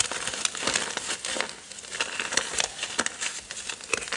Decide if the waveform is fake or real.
real